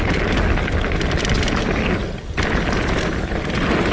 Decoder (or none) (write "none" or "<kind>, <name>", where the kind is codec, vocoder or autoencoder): none